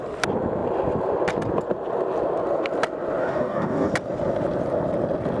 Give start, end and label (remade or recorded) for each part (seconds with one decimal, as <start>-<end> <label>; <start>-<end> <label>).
0.0-3.2 recorded; 3.2-3.9 remade; 3.9-5.4 recorded